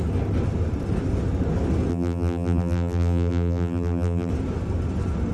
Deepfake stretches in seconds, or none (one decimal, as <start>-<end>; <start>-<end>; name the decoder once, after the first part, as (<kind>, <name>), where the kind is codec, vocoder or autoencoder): 1.9-4.3 (vocoder, BigVGAN v2)